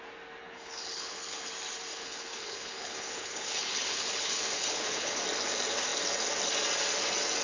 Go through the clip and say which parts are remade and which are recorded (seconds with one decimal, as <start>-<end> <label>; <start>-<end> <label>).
0.0-0.4 recorded; 0.4-1.5 remade; 1.5-1.9 recorded; 1.9-5.2 remade; 5.2-7.4 recorded